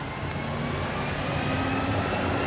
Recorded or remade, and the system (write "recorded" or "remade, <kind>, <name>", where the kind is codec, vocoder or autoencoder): recorded